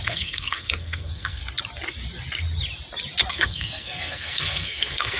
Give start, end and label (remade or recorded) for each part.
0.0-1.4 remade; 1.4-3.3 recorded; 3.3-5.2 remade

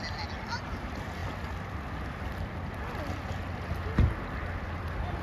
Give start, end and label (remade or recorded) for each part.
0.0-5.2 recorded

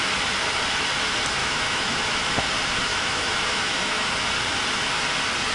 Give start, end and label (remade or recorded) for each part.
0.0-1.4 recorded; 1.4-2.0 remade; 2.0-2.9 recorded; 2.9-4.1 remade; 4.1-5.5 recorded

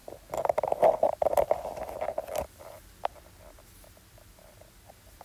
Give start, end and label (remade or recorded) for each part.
0.0-5.2 recorded

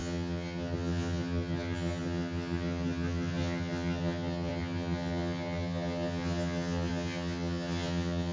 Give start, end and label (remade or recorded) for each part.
0.0-8.3 remade

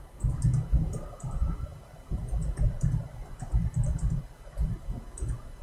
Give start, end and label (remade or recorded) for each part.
0.0-5.6 remade

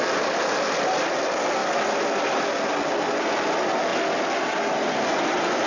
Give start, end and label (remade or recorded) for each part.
0.0-5.7 recorded

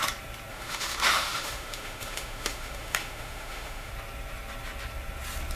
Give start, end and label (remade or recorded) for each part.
0.0-0.5 recorded; 0.5-3.9 remade; 3.9-5.6 recorded